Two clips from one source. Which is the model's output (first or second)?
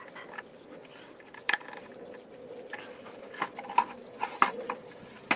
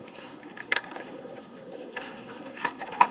second